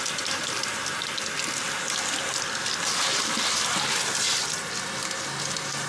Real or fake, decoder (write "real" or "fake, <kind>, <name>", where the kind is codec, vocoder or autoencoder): real